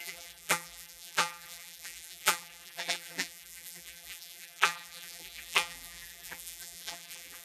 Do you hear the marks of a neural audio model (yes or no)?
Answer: yes